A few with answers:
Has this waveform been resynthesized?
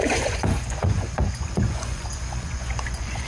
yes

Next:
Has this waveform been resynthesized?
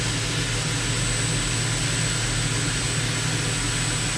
no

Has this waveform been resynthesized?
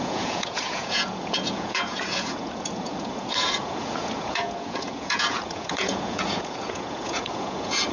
yes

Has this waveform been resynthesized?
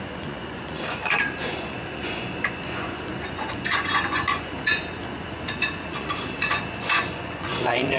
yes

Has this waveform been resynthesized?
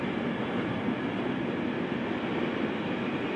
no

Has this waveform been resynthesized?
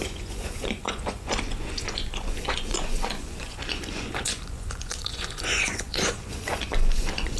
yes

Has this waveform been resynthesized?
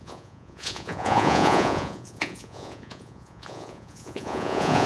yes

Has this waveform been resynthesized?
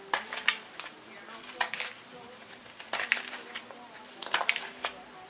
no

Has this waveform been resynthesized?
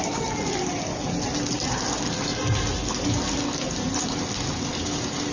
no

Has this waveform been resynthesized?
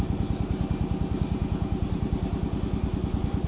no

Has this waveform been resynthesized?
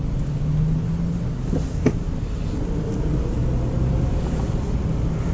no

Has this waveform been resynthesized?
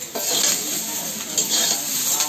no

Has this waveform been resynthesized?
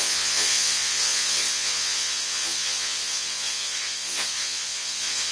yes